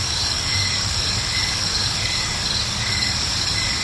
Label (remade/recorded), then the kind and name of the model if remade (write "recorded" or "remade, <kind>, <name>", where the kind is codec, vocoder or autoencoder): remade, codec, DAC